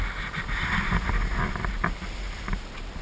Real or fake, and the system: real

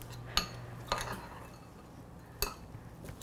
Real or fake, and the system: real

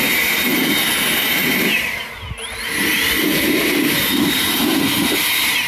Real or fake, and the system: real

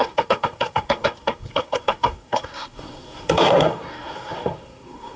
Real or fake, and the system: fake, codec, SNAC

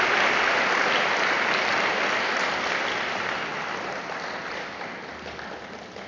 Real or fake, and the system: real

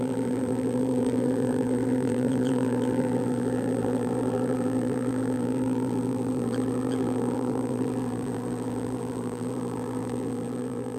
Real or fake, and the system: fake, vocoder, BigVGAN v2